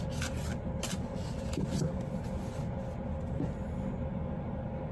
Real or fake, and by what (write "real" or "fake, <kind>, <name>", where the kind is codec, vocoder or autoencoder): real